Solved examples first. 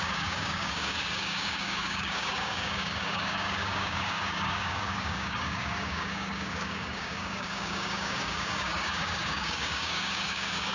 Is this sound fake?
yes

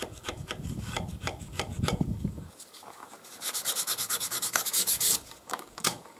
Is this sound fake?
yes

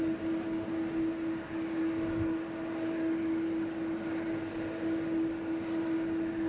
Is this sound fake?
no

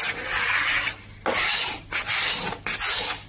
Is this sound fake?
no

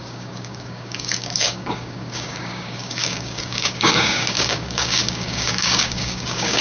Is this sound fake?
yes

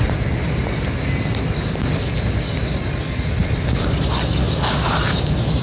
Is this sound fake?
no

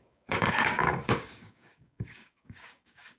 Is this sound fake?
yes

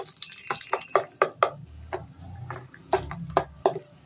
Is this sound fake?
no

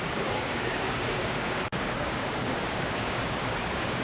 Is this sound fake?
yes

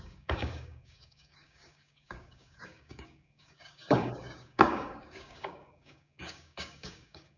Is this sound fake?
yes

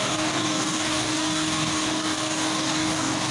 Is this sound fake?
yes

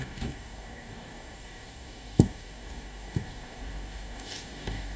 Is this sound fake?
yes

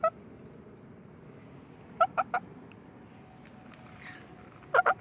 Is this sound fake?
no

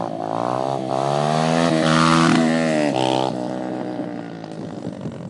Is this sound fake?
no